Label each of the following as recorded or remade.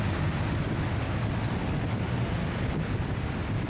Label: recorded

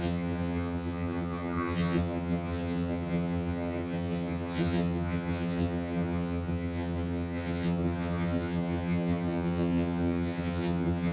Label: remade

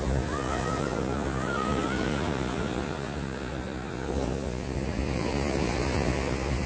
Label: remade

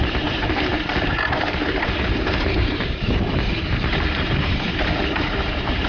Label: remade